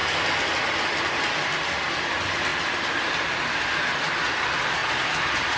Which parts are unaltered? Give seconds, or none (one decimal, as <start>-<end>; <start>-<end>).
0.0-2.5; 4.2-4.8